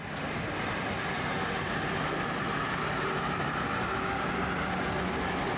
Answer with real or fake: real